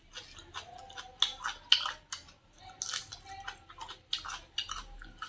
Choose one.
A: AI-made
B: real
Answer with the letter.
B